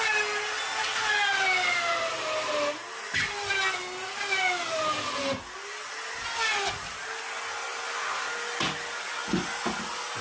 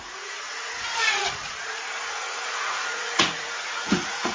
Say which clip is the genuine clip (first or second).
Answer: first